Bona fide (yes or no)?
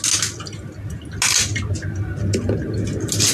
yes